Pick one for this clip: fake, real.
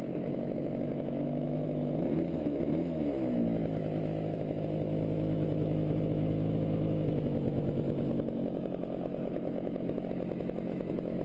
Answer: fake